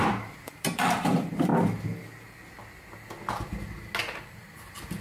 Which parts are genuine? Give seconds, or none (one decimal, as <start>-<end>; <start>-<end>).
1.5-4.0